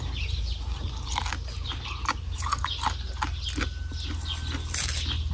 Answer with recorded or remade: recorded